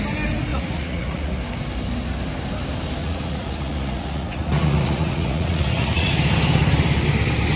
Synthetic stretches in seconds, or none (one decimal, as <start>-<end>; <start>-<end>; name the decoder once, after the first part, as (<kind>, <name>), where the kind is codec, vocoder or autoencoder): 0.5-1.4 (vocoder, Vocos); 3.0-6.1